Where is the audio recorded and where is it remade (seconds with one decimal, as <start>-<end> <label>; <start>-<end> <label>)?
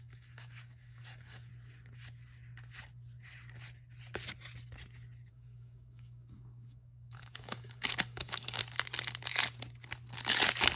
0.0-1.5 remade; 1.5-5.3 recorded; 5.3-8.6 remade; 8.6-10.8 recorded